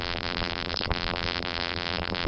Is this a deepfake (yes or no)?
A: yes